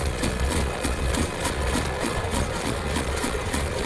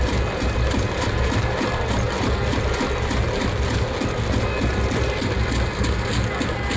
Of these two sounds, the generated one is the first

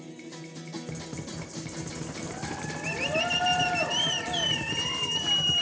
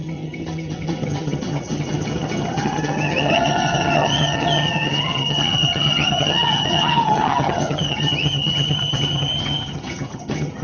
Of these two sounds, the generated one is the second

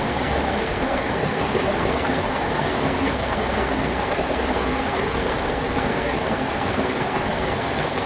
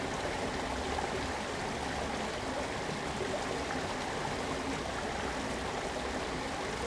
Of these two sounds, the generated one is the first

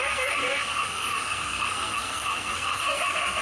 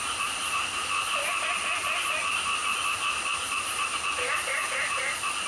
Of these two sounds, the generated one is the first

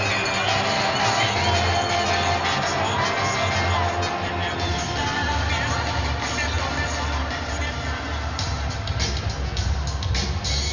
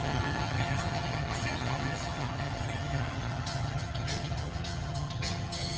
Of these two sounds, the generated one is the second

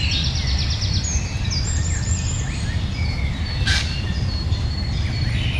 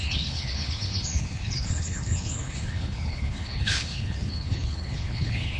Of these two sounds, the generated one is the second